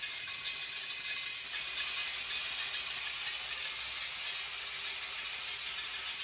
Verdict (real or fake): real